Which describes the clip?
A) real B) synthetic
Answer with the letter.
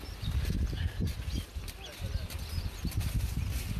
A